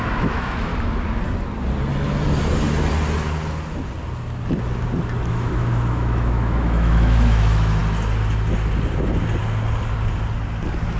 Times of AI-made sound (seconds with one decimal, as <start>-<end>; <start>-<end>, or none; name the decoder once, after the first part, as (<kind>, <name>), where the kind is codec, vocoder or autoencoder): 0.0-0.7 (autoencoder, DAC-VAE); 5.3-7.8